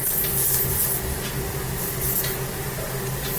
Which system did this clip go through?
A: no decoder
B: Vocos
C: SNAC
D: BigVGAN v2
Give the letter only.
A